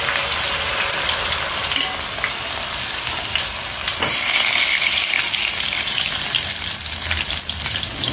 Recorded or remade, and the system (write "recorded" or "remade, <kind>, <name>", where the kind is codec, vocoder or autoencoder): recorded